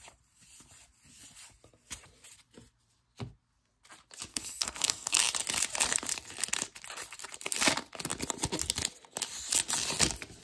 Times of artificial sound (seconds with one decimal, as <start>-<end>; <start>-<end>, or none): 4.3-5.2